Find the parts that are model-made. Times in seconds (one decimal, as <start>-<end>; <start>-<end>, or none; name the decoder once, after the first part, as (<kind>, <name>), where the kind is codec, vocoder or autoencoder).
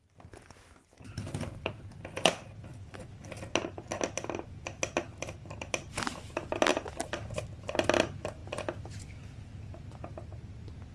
6.7-7.7 (vocoder, BigVGAN v2); 8.4-9.6